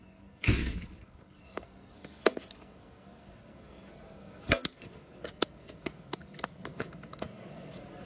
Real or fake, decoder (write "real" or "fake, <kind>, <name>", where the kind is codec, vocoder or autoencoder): fake, codec, SNAC